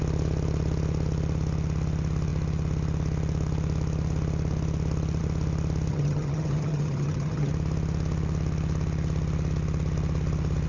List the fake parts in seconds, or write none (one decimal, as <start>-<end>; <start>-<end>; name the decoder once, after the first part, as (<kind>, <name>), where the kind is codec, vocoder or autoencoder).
5.9-7.5 (vocoder, HiFi-GAN)